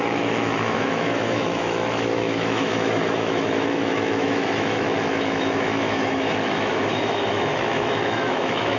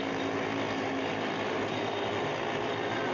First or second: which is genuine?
second